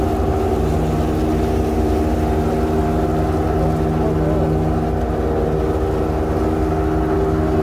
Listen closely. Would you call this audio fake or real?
real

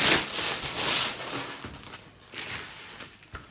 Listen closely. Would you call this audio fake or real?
real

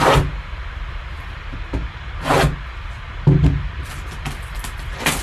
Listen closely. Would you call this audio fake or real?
real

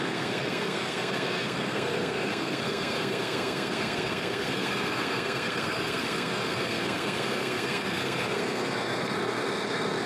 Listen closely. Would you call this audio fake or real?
fake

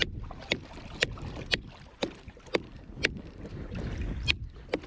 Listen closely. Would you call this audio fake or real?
real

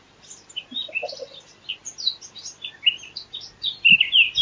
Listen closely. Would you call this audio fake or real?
real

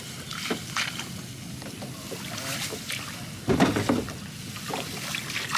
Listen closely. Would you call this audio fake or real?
real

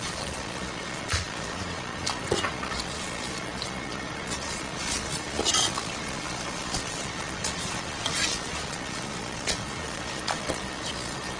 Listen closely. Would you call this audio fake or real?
fake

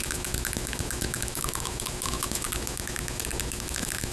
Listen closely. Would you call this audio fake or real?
fake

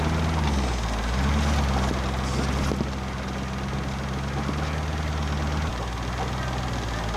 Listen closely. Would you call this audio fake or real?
real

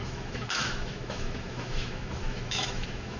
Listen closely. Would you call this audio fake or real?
fake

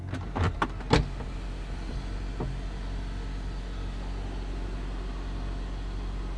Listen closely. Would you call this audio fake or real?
real